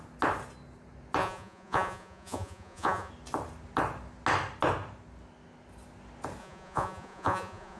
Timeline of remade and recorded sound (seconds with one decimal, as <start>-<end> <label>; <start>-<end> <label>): 0.0-1.2 recorded; 1.2-3.1 remade; 3.1-6.4 recorded; 6.4-7.8 remade

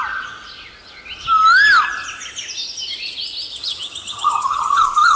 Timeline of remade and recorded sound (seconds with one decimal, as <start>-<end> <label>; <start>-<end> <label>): 0.0-3.6 recorded; 3.6-4.8 remade; 4.8-5.2 recorded

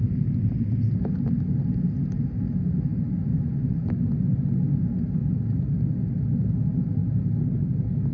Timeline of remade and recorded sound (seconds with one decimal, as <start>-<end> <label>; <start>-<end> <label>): 0.0-3.2 recorded; 3.2-3.8 remade; 3.8-8.1 recorded

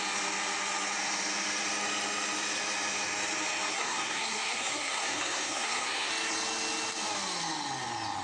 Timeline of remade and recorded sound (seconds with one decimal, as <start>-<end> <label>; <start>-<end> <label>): 0.0-3.7 recorded; 3.7-6.1 remade; 6.1-8.2 recorded

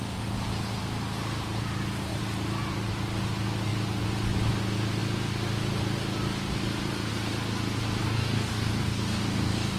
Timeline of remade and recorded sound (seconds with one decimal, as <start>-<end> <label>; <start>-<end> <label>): 0.0-8.0 recorded; 8.0-9.8 remade